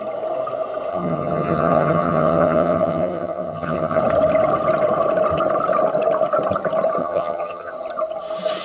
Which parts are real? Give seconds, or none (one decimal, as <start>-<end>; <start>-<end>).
0.0-0.9; 4.0-7.0; 7.7-8.6